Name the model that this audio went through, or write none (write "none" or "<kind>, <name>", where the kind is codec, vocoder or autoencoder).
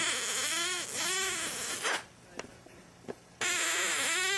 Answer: none